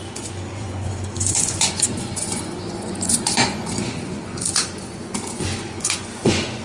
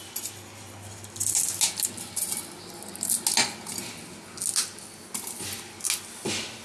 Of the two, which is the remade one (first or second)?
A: first